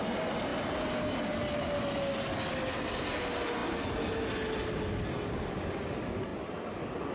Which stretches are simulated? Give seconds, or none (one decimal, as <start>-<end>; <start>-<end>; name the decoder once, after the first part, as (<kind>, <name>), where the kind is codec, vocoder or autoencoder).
none